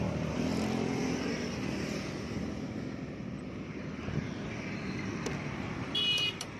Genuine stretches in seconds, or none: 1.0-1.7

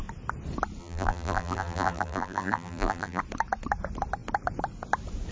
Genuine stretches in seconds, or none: 0.0-0.8; 3.2-5.3

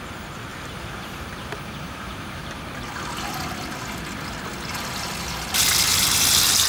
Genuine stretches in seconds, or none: 0.0-0.5; 2.6-6.7

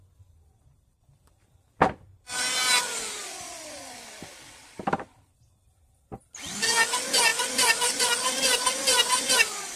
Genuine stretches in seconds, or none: 0.0-3.2; 6.6-7.3

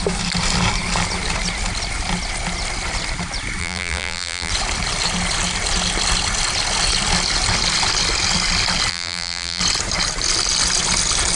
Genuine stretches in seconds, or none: 0.0-3.6; 4.5-8.9; 9.6-11.4

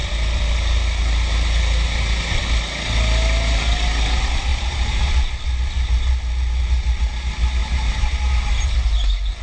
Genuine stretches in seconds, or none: 0.0-4.5; 5.0-7.6; 8.7-9.4

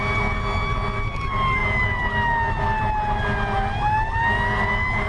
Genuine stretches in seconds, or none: 0.0-5.1